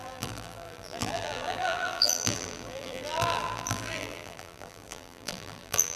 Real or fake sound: fake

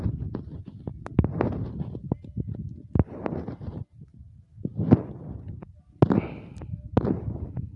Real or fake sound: real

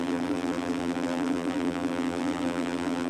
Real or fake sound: fake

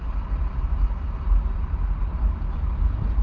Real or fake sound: real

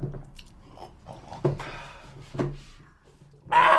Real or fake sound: real